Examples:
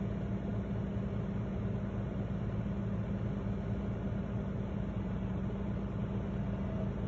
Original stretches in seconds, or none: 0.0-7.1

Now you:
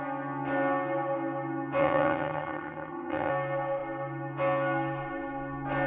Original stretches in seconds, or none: 0.0-1.8; 3.3-5.9

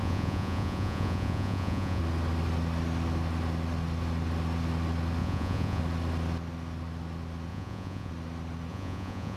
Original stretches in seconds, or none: 2.0-5.2; 5.8-7.5; 8.1-8.7

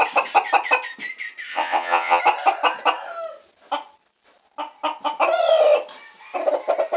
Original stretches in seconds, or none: 0.0-1.5; 2.2-7.0

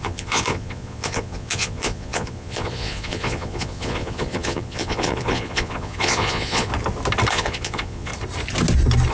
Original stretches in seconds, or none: 6.7-7.3; 8.1-9.1

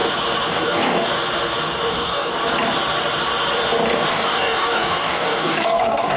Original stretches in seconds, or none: 0.0-0.5; 1.1-1.9; 2.3-4.1